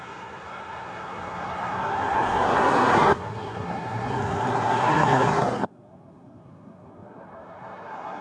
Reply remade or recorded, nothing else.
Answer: remade